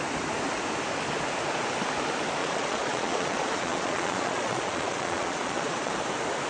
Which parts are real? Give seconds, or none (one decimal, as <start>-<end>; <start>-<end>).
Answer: 0.0-2.4; 5.9-6.5